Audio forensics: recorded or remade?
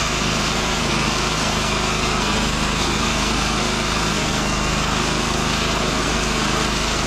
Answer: remade